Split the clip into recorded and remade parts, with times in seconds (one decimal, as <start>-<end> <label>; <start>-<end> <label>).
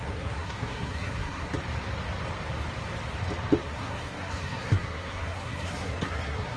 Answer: 0.0-1.5 remade; 1.5-3.6 recorded; 3.6-6.6 remade